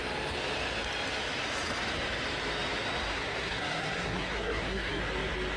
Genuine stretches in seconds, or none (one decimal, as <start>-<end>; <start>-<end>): 0.0-3.1; 5.0-5.6